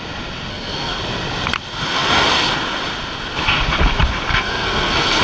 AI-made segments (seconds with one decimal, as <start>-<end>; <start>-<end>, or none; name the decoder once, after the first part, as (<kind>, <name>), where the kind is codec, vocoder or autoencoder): 0.5-1.0 (codec, SNAC); 4.3-5.2